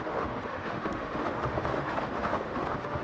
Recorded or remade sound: remade